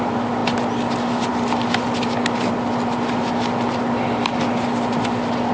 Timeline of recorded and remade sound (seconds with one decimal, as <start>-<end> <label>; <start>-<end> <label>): 0.0-5.5 recorded